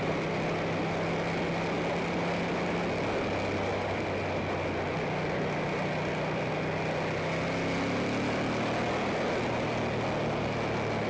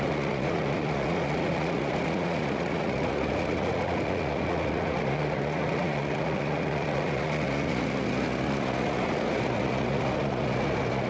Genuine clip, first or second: first